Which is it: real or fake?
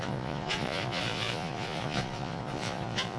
fake